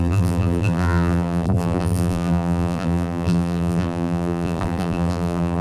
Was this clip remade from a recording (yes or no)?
yes